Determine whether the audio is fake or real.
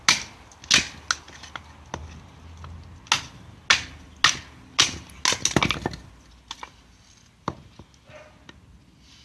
real